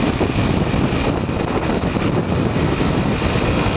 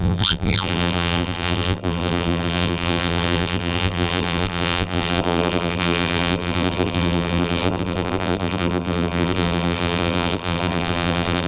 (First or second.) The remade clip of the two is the second